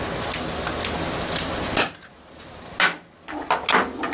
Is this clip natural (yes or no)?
yes